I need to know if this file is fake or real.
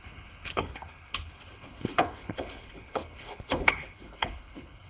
fake